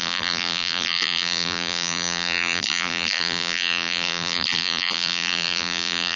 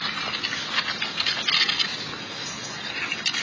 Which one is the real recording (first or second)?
second